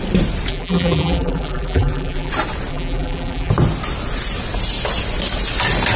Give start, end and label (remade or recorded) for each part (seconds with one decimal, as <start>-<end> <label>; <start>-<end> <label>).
0.0-0.5 recorded; 0.5-2.3 remade; 2.3-2.7 recorded; 2.7-3.5 remade; 3.5-6.0 recorded